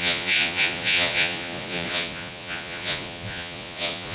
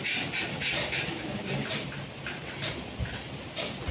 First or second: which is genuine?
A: second